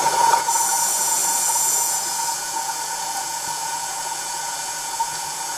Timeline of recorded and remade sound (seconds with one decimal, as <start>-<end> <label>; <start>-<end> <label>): 0.0-5.6 remade